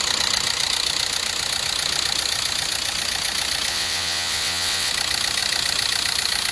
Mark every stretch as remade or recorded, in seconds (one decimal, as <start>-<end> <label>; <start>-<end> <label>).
0.0-3.7 recorded; 3.7-4.9 remade; 4.9-6.5 recorded